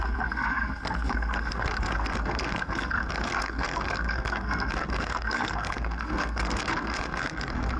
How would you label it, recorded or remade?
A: remade